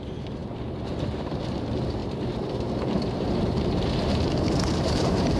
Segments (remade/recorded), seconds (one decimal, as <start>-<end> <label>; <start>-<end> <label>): 0.0-5.4 remade